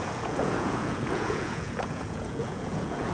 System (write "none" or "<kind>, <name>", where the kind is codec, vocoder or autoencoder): vocoder, Vocos